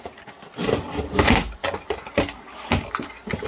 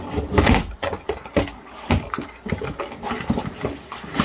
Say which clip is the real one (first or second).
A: first